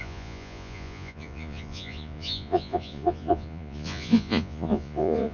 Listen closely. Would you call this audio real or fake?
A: fake